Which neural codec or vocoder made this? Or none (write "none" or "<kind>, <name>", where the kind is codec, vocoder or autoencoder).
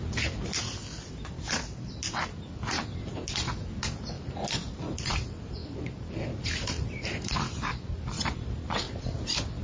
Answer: none